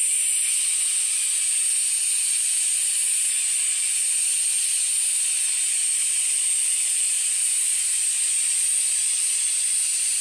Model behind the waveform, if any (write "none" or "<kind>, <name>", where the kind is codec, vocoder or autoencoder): none